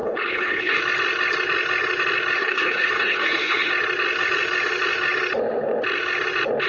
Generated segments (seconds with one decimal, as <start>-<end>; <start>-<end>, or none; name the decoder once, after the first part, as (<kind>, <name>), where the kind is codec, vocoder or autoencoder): 0.0-0.8 (codec, HILCodec); 2.4-3.7